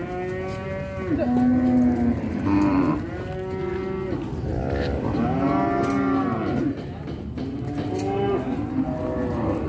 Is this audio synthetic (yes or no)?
no